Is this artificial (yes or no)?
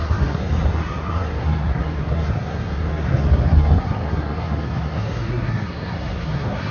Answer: yes